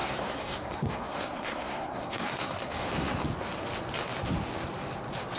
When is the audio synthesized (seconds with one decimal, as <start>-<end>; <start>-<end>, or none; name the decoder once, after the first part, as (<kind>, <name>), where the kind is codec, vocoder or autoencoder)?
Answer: 0.0-3.2 (codec, SNAC)